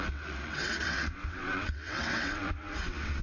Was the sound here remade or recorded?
remade